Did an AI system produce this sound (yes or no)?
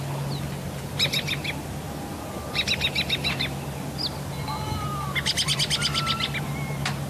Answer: no